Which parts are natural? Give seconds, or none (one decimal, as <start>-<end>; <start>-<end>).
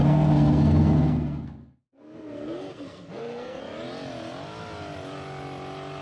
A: 3.6-6.0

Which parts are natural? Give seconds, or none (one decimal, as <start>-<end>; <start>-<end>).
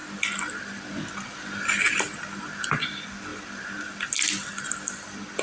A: 0.0-5.4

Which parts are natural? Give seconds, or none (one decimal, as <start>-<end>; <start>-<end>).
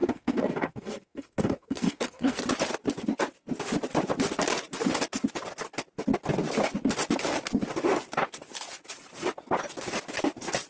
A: 2.4-10.7